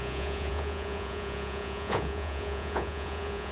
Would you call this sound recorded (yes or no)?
no